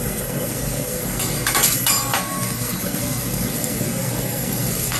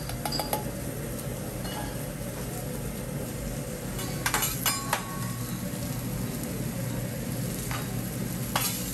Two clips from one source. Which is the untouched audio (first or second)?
second